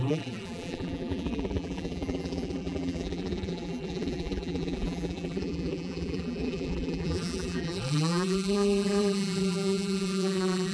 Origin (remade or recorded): remade